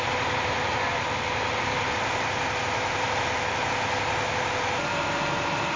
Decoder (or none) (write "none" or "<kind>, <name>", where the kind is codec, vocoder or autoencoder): none